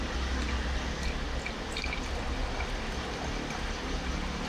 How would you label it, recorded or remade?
recorded